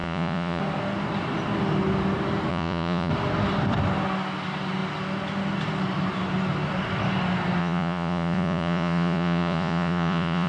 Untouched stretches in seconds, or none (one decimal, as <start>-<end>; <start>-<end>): 0.6-2.5; 3.1-7.6